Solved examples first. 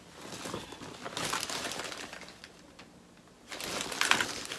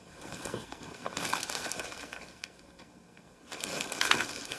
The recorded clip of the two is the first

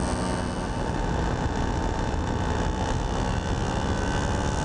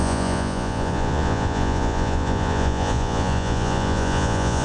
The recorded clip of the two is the first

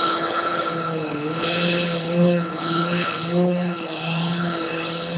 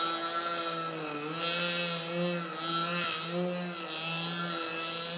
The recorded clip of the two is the second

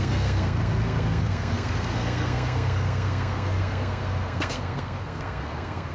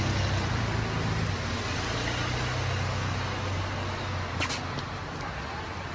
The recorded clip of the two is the second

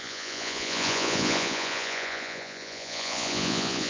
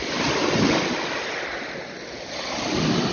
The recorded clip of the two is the second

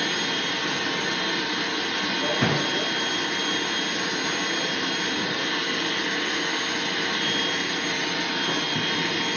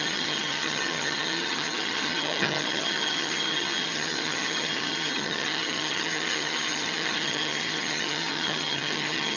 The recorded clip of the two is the first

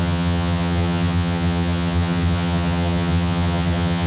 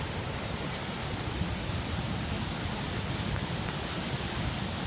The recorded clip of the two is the second